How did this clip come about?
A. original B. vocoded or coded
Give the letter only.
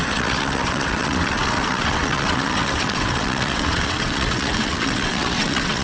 B